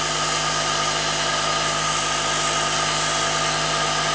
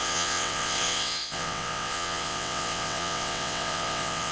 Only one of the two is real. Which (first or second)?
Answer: first